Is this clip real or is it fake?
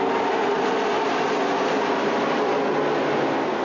real